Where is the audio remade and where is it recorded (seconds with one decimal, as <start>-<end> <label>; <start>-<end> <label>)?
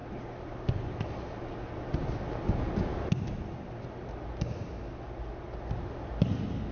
0.0-6.7 recorded